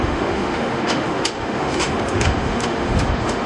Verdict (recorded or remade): remade